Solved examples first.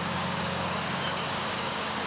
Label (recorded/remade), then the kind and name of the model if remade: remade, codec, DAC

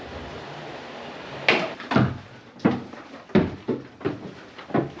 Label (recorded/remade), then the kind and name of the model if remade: recorded